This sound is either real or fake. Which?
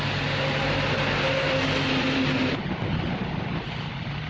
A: real